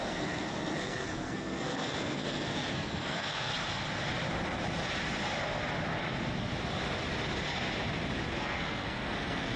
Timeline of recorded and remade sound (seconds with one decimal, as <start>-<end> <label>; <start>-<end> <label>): 0.0-3.5 remade; 3.5-8.4 recorded; 8.4-9.6 remade

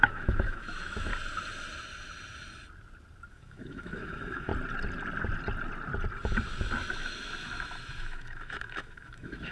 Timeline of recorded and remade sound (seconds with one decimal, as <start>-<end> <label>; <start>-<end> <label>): 0.0-1.1 remade; 1.1-3.3 recorded; 3.3-4.5 remade; 4.5-6.9 recorded; 6.9-9.5 remade

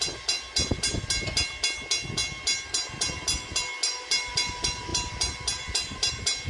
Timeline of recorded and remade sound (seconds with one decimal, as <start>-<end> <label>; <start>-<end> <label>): 0.0-6.5 recorded

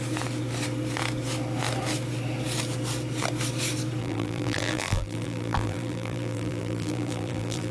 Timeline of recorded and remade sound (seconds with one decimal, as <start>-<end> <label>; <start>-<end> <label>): 0.0-4.0 recorded; 4.0-7.7 remade

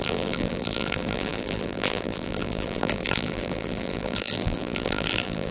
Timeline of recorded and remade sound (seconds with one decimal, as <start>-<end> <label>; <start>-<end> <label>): 0.0-5.5 remade

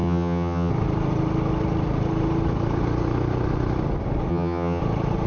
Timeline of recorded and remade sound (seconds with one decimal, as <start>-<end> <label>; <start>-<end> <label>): 0.0-0.7 remade; 0.7-4.3 recorded; 4.3-4.8 remade; 4.8-5.3 recorded